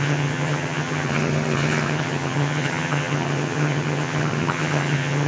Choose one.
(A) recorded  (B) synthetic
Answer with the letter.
B